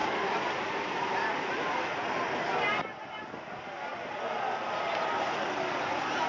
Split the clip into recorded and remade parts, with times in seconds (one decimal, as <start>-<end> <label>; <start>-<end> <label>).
0.0-6.3 recorded